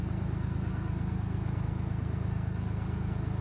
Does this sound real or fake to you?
fake